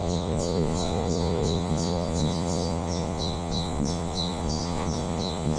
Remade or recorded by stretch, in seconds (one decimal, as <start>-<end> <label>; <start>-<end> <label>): 0.0-5.6 remade

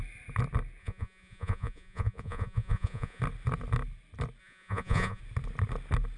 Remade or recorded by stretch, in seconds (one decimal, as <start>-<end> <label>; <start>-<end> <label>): 0.0-0.8 recorded; 0.8-3.2 remade; 3.2-4.4 recorded; 4.4-5.2 remade; 5.2-6.2 recorded

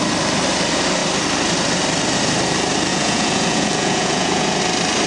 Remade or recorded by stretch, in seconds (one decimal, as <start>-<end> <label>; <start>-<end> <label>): 0.0-2.9 recorded; 2.9-4.6 remade; 4.6-5.1 recorded

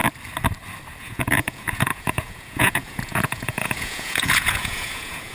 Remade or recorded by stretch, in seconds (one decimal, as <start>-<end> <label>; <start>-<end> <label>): 0.0-1.0 recorded; 1.0-5.3 remade

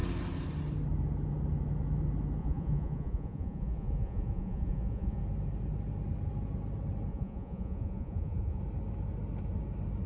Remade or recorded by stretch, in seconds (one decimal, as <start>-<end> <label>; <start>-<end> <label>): 0.0-2.4 recorded; 2.4-5.2 remade; 5.2-7.1 recorded; 7.1-8.6 remade; 8.6-10.1 recorded

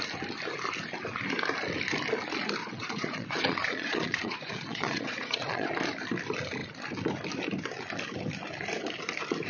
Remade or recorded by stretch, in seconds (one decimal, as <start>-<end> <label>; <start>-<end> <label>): 0.0-2.6 recorded; 2.6-5.7 remade; 5.7-9.5 recorded

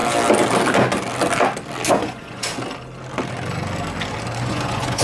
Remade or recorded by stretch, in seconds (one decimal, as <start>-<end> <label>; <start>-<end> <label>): 0.0-1.9 recorded; 1.9-2.5 remade; 2.5-4.4 recorded; 4.4-5.0 remade

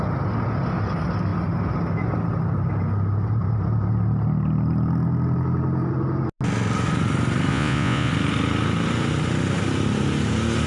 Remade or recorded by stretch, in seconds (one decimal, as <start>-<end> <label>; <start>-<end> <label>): 0.0-7.5 recorded; 7.5-8.1 remade; 8.1-10.7 recorded